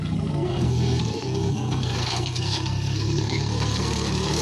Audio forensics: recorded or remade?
remade